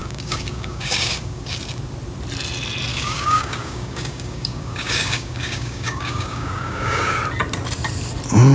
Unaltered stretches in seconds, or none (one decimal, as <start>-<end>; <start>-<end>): 1.6-2.9; 7.2-8.5